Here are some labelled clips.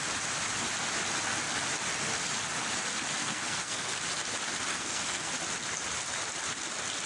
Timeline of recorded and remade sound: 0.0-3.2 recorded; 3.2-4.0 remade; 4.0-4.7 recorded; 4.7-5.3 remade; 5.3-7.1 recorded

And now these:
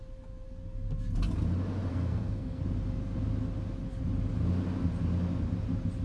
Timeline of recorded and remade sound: 0.0-1.9 recorded; 1.9-2.6 remade; 2.6-6.0 recorded

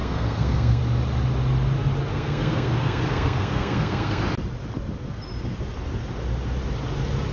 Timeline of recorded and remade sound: 0.0-0.8 remade; 0.8-2.1 recorded; 2.1-4.2 remade; 4.2-7.3 recorded